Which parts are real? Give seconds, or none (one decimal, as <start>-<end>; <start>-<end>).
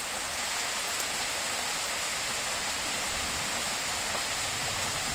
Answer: 0.0-2.5; 3.3-5.1